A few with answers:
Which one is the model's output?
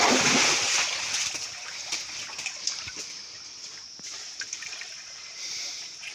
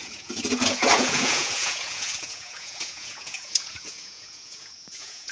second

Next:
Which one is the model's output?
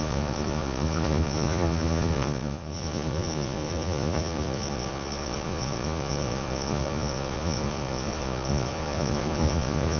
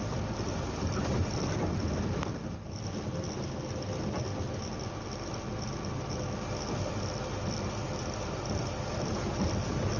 first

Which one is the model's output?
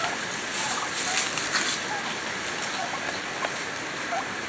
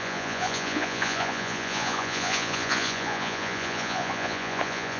second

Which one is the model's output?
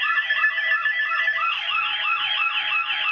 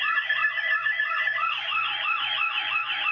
second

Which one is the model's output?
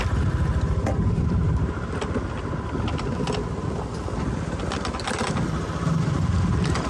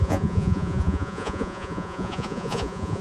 second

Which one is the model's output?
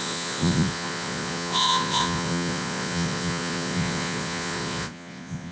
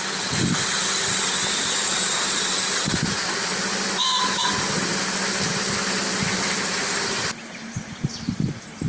first